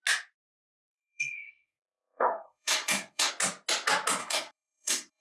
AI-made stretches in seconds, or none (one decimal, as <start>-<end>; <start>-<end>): 0.7-3.3; 4.2-5.2